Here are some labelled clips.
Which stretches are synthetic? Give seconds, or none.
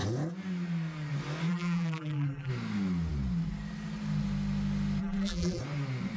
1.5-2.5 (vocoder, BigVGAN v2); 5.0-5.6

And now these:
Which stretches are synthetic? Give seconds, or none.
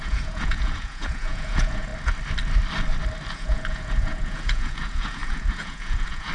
0.0-1.9 (vocoder, Vocos); 3.3-6.3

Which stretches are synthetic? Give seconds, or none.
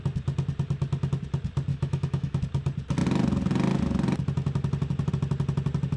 1.7-2.4 (autoencoder, DAC-VAE)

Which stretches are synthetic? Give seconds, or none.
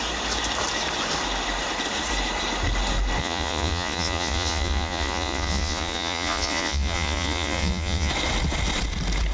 3.2-8.1 (vocoder, Vocos)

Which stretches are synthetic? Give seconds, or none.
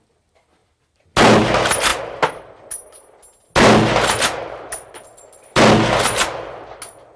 none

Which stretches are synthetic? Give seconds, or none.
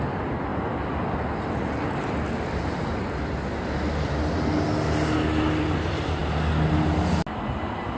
none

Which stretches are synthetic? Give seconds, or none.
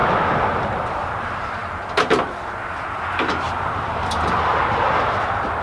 0.0-1.6 (vocoder, BigVGAN v2); 2.6-5.6